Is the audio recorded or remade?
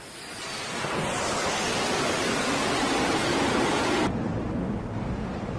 recorded